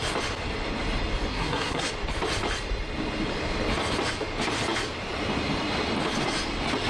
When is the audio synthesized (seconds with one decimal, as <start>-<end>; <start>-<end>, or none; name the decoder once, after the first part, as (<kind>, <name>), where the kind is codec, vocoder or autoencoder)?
1.3-1.9 (codec, SNAC)